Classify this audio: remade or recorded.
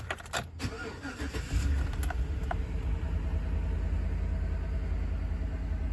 recorded